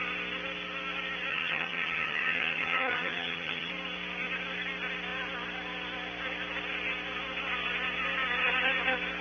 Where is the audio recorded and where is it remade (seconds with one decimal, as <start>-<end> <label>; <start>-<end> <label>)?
0.0-1.3 recorded; 1.3-3.7 remade; 3.7-9.2 recorded